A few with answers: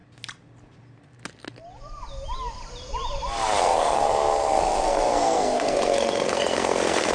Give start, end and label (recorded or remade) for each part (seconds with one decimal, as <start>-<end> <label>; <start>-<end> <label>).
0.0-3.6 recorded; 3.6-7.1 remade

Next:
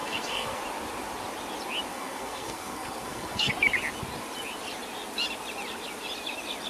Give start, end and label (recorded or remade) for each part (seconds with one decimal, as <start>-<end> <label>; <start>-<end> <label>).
0.0-0.6 remade; 0.6-1.9 recorded; 1.9-3.5 remade; 3.5-6.7 recorded

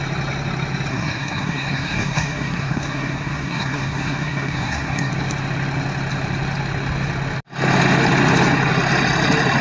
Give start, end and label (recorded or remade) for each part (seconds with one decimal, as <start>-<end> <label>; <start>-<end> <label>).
0.0-0.9 recorded; 0.9-5.1 remade; 5.1-9.6 recorded

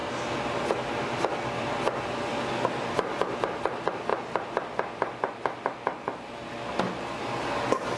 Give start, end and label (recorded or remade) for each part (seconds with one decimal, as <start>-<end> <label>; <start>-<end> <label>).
0.0-8.0 recorded

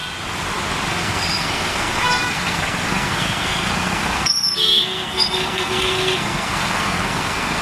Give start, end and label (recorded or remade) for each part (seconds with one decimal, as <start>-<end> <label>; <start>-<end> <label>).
0.0-0.9 recorded; 0.9-7.6 remade

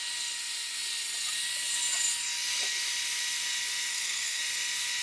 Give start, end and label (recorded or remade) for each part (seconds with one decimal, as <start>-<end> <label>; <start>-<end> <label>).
0.0-3.9 recorded; 3.9-4.4 remade; 4.4-5.0 recorded

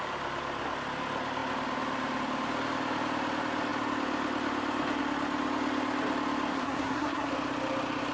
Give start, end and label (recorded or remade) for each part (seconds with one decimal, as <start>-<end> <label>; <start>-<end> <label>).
0.0-6.5 recorded; 6.5-7.3 remade; 7.3-8.1 recorded

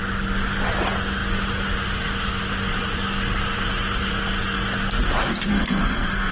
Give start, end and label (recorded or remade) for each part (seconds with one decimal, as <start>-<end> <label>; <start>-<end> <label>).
0.0-5.5 recorded; 5.5-6.3 remade